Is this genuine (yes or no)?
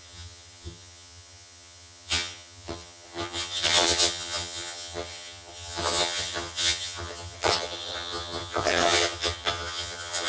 no